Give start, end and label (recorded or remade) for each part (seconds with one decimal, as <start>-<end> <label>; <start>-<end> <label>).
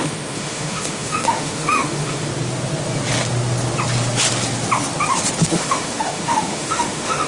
0.0-2.3 remade; 2.3-5.5 recorded; 5.5-7.3 remade